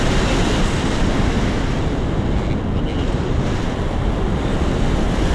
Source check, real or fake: real